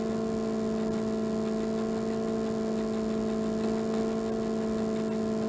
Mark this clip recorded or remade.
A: recorded